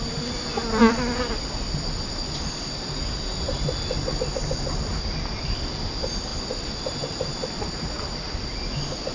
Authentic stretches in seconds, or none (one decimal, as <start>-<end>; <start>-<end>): 0.0-9.1